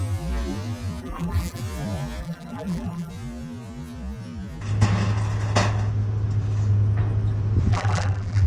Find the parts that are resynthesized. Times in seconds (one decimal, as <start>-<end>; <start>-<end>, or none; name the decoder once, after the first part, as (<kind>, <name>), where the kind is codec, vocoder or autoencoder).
1.0-1.6 (vocoder, BigVGAN v2); 2.2-3.1; 7.7-8.5